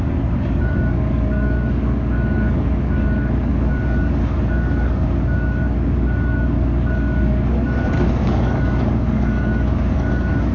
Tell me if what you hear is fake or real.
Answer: fake